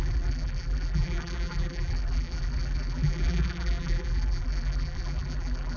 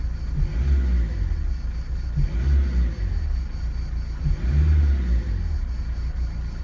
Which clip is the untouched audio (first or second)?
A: second